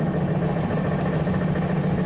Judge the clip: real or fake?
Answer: real